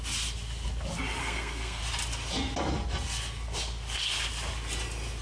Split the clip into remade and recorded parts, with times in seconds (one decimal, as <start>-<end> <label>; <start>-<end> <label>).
0.0-1.2 recorded; 1.2-1.8 remade; 1.8-5.2 recorded